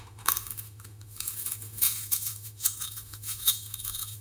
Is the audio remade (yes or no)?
yes